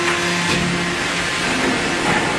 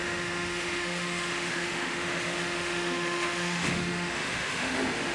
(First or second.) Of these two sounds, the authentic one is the first